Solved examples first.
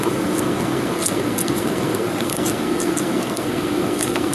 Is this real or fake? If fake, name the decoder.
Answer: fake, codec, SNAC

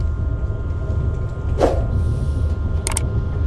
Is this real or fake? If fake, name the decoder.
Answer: real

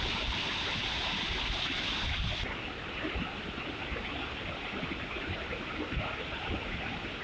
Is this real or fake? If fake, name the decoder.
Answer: real